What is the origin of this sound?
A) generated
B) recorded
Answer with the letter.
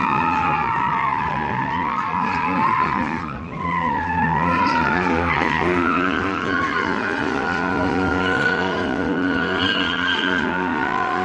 A